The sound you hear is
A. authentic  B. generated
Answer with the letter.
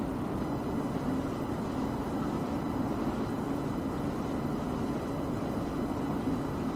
B